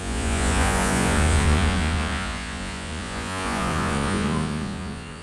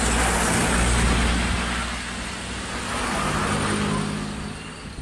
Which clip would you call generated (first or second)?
first